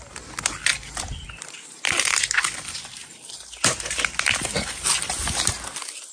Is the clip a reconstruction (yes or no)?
no